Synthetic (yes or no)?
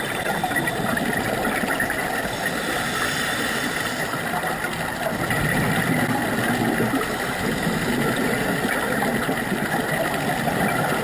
no